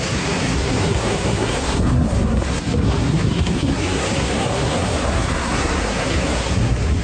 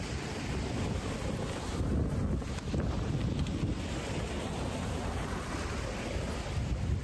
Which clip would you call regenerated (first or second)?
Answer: first